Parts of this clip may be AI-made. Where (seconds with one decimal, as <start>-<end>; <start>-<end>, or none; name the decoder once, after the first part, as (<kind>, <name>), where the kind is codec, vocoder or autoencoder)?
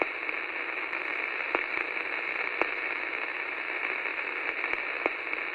none